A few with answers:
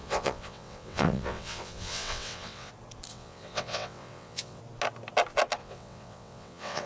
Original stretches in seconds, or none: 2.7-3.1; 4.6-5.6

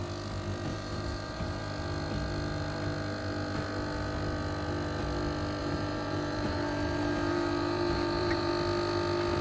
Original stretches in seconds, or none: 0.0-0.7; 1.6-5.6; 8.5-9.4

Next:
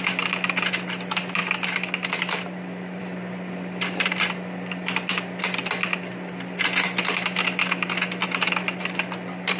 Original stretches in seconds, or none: 0.0-9.6

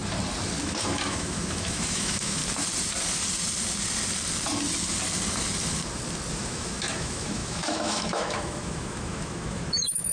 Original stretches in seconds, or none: 0.0-0.6; 2.4-6.3

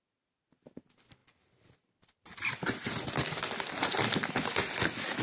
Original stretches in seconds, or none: 0.0-1.2; 4.3-5.2